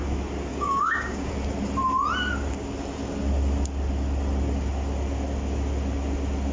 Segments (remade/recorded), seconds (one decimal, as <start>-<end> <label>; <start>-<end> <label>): 0.0-0.5 recorded; 0.5-1.3 remade; 1.3-6.5 recorded